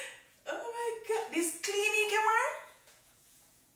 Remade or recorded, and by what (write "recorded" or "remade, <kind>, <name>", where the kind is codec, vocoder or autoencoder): remade, vocoder, Vocos